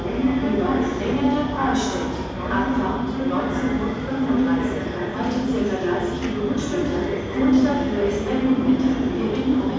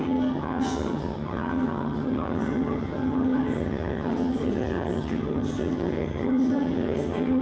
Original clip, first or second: first